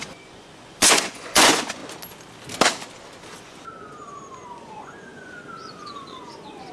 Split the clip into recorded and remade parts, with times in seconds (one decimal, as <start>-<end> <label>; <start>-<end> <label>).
0.0-1.8 remade; 1.8-3.4 recorded; 3.4-6.7 remade